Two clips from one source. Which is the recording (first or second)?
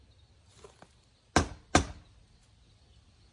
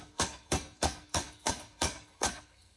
first